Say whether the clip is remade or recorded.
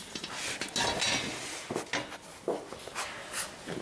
recorded